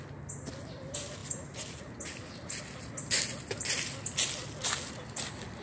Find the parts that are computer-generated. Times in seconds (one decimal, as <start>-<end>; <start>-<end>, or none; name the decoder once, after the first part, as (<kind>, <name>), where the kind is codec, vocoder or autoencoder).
none